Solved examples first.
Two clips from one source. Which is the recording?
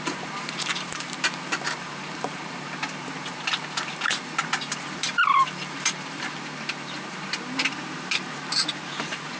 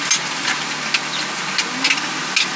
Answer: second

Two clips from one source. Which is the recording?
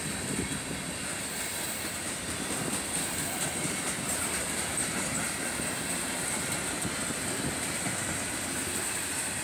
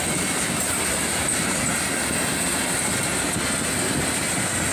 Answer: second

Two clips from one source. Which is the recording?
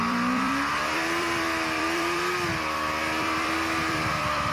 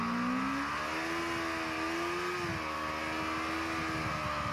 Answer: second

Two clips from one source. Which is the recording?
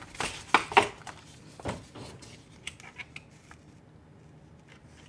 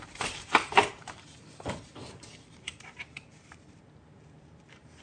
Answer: first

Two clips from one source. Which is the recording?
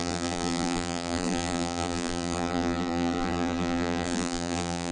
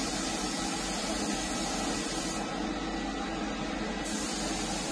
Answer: second